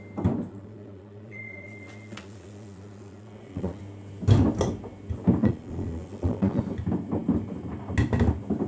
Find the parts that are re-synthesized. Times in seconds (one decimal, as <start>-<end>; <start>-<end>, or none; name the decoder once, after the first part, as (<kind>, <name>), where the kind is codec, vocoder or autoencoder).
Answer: 0.5-3.8 (vocoder, Vocos); 5.4-6.6